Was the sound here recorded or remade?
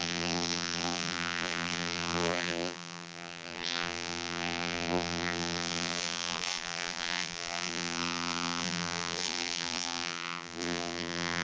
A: remade